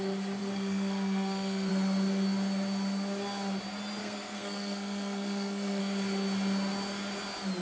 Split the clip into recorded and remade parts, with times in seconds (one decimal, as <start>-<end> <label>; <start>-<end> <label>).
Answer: 0.0-0.4 recorded; 0.4-1.7 remade; 1.7-4.0 recorded; 4.0-5.8 remade; 5.8-7.6 recorded